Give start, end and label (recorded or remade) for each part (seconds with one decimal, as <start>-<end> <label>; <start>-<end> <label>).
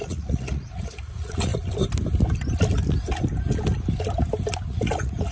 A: 0.0-1.5 remade; 1.5-4.7 recorded; 4.7-5.3 remade